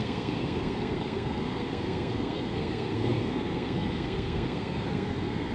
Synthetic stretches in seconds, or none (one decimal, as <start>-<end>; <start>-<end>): 0.0-5.5